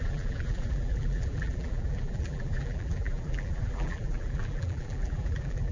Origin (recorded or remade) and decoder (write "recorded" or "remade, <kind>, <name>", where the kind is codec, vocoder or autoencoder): remade, vocoder, BigVGAN v2